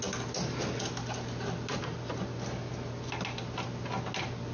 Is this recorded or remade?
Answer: recorded